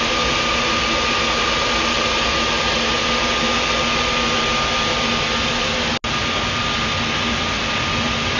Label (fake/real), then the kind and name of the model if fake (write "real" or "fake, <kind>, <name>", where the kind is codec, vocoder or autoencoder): real